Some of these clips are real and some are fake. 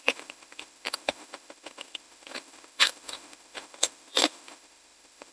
fake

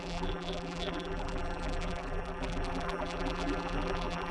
fake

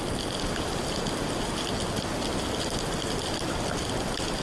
real